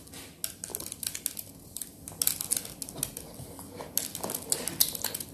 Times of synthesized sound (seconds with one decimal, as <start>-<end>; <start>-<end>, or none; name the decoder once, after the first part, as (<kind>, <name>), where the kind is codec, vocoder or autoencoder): none

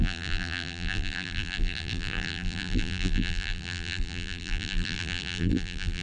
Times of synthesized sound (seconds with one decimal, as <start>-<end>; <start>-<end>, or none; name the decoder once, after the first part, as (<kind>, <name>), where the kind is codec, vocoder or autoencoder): 0.0-6.0 (vocoder, BigVGAN v2)

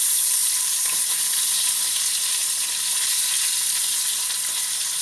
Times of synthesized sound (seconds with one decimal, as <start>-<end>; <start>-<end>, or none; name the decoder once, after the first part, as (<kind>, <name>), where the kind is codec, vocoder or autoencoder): 0.4-1.2 (vocoder, BigVGAN v2)

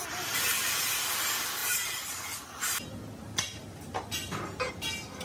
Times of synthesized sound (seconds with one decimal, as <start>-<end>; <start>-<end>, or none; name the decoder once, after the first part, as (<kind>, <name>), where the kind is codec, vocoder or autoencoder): 1.6-4.7 (vocoder, BigVGAN v2)